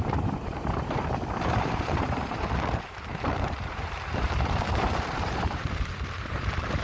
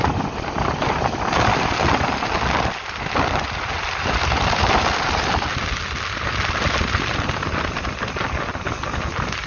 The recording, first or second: second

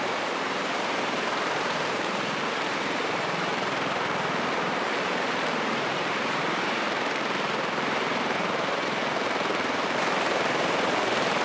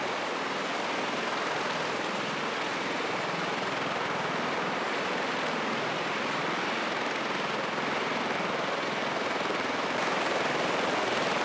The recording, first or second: second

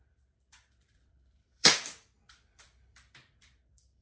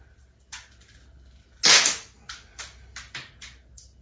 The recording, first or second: second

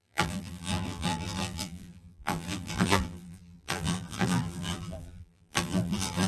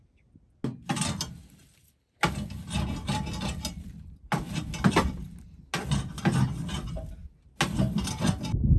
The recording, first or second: second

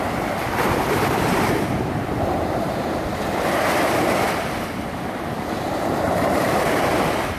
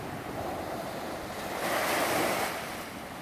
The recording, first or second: second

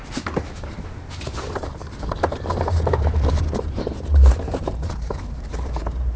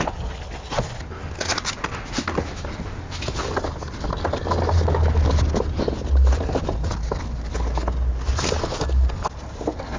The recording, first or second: second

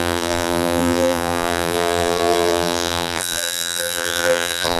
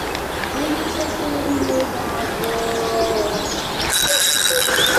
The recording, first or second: second